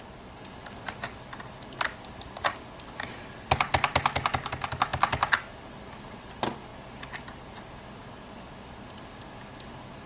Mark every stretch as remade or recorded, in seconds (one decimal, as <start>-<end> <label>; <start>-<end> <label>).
0.0-10.1 recorded